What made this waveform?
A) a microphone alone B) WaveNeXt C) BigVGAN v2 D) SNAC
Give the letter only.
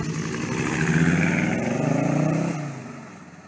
A